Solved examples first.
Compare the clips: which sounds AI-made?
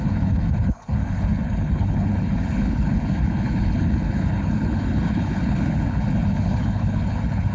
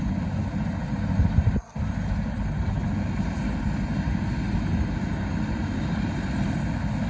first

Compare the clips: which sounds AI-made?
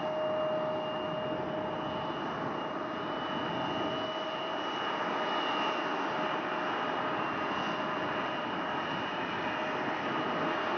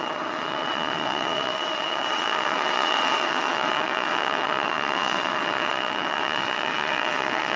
second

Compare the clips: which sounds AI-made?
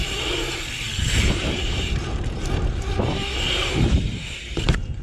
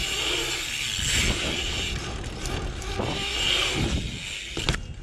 first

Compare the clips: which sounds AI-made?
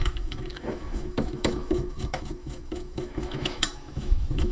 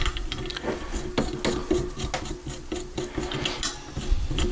first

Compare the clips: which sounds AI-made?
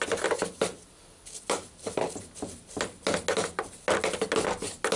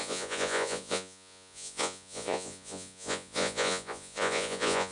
second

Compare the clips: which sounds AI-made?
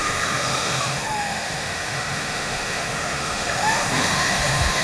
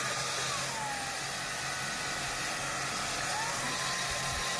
first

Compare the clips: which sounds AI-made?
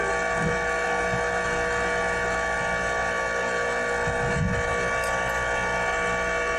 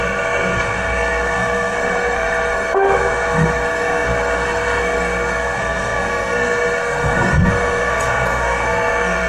second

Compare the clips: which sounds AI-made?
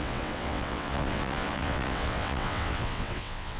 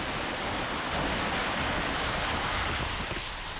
first